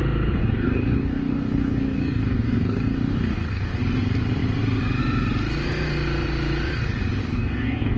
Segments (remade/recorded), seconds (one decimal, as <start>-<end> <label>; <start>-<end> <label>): 0.0-0.4 recorded; 0.4-3.8 remade; 3.8-7.2 recorded; 7.2-8.0 remade